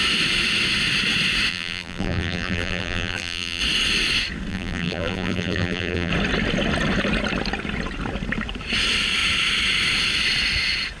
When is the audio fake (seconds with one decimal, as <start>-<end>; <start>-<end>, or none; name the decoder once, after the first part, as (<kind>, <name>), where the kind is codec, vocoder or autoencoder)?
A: 1.5-3.6 (vocoder, BigVGAN v2); 4.5-6.1